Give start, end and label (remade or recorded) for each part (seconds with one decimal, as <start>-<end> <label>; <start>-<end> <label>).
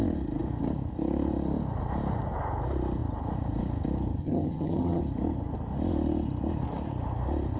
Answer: 0.0-4.2 recorded; 4.2-5.0 remade; 5.0-7.6 recorded